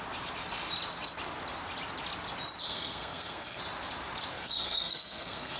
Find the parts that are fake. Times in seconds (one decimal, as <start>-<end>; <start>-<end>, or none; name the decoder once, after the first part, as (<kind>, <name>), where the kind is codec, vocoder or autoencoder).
2.7-3.6 (codec, SNAC); 4.3-5.6